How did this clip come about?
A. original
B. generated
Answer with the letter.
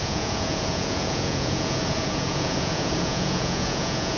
B